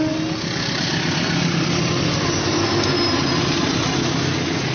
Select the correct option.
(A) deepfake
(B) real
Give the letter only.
B